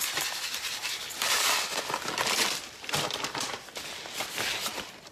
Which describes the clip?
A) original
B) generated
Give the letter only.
A